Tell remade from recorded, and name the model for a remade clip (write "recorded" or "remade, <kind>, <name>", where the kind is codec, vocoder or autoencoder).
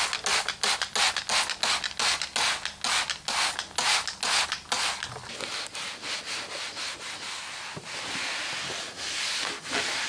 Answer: recorded